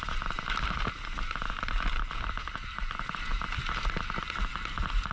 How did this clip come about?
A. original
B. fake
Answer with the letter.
A